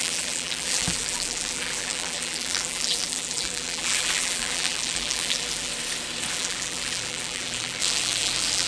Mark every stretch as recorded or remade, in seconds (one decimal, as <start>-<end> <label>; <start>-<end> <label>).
0.0-5.7 remade; 5.7-6.3 recorded; 6.3-8.7 remade